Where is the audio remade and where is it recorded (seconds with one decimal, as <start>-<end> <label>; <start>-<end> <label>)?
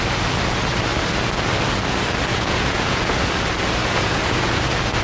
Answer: 0.0-2.3 recorded; 2.3-3.3 remade; 3.3-3.8 recorded; 3.8-4.6 remade; 4.6-5.0 recorded